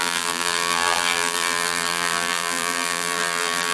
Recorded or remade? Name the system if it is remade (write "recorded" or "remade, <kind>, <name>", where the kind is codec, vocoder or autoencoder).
remade, vocoder, BigVGAN v2